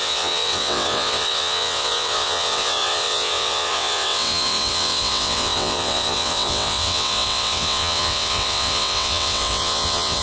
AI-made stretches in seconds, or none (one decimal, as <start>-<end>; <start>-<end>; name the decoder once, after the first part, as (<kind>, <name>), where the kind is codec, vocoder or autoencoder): 0.0-10.2 (vocoder, WaveNeXt)